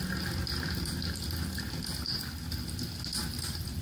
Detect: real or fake real